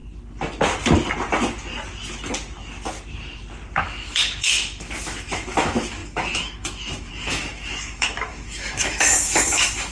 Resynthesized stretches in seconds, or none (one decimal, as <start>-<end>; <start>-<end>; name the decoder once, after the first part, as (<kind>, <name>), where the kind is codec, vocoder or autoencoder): 3.8-9.9 (autoencoder, DAC-VAE)